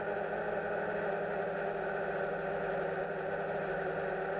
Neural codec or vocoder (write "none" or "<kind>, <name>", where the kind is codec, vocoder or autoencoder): none